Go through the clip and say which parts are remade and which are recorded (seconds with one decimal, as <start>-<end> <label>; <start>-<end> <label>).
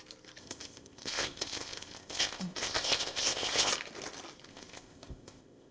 0.0-0.4 recorded; 0.4-3.7 remade; 3.7-4.5 recorded; 4.5-5.7 remade